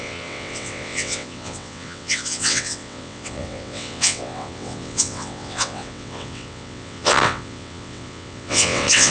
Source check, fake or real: fake